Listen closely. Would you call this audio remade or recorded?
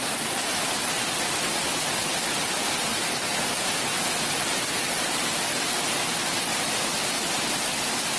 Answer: recorded